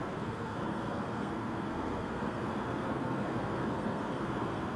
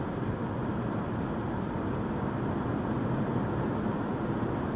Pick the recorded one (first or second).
second